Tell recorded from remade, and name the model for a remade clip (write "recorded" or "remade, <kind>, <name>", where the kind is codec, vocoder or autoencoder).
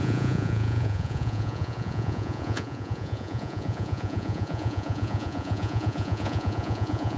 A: remade, vocoder, Vocos